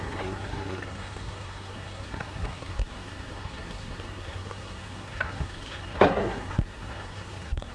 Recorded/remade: remade